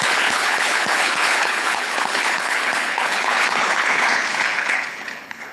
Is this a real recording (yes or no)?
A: no